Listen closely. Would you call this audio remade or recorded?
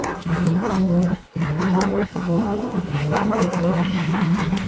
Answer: remade